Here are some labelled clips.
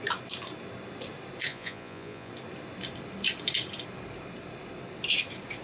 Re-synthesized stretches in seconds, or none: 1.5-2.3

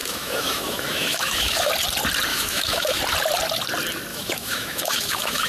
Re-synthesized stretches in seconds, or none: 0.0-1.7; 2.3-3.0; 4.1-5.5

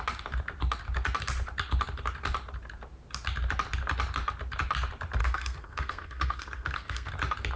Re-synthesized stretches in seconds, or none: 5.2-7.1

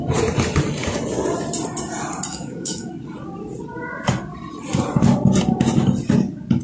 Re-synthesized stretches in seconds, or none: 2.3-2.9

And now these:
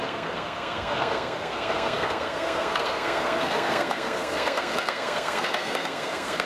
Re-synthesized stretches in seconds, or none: 0.0-6.5